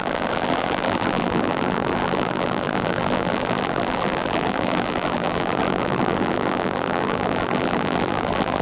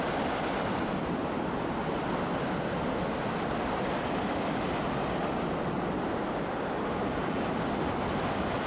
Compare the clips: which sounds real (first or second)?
second